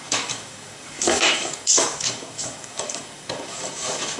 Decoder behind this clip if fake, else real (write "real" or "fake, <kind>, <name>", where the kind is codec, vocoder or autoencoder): fake, codec, DAC